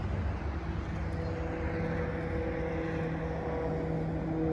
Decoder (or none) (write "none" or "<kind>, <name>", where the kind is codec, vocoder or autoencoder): none